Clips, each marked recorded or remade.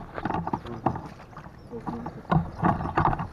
recorded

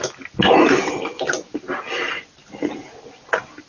recorded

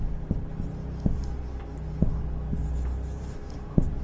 recorded